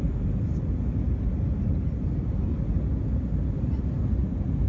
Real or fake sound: real